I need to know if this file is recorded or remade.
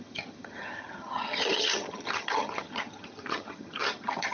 remade